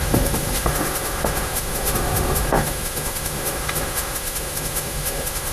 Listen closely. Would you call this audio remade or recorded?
remade